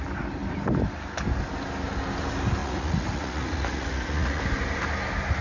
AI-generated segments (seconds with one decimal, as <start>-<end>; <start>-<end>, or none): 2.6-4.4